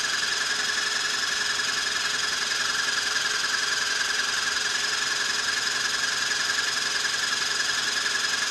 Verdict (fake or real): real